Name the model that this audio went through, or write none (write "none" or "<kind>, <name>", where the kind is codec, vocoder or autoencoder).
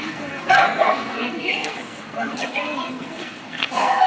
codec, SNAC